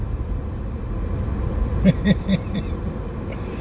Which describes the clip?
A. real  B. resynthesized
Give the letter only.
A